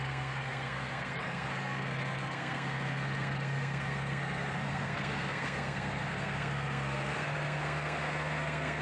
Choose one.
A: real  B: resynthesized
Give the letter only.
B